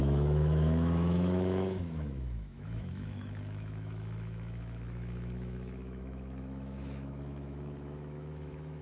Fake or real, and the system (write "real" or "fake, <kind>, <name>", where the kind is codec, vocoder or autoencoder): fake, autoencoder, DAC-VAE